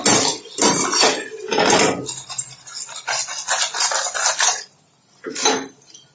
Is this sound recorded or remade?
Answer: recorded